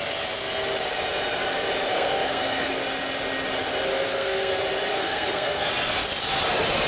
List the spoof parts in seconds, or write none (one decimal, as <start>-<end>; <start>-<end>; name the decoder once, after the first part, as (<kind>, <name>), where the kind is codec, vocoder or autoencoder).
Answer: 1.9-2.7 (codec, SNAC); 3.9-4.5; 4.9-5.7